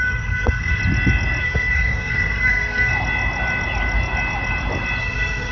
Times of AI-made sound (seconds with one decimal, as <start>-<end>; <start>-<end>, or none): 0.0-0.8; 1.4-2.9; 5.0-5.5